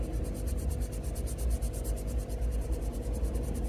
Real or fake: real